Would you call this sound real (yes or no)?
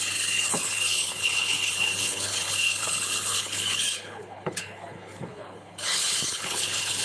no